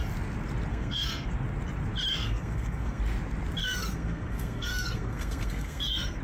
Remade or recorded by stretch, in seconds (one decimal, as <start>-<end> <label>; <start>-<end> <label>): 0.0-0.7 recorded; 0.7-1.3 remade; 1.3-2.1 recorded; 2.1-3.0 remade; 3.0-3.6 recorded; 3.6-6.2 remade